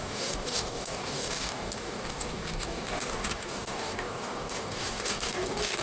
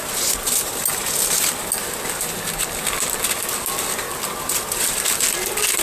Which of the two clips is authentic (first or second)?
second